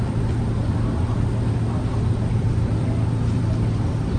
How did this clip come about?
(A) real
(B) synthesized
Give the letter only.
A